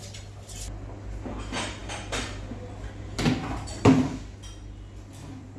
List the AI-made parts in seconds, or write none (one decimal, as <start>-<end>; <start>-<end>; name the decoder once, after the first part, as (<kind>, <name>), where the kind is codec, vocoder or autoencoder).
none